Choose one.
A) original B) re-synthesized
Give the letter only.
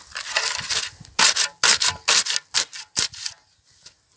A